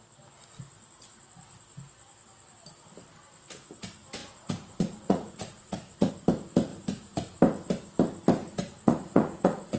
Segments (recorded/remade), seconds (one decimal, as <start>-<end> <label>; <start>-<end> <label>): 0.0-4.2 recorded; 4.2-6.1 remade; 6.1-6.7 recorded; 6.7-7.4 remade; 7.4-8.4 recorded; 8.4-9.8 remade